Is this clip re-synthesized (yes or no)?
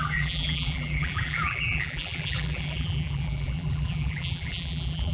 yes